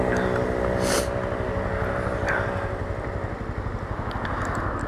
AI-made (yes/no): no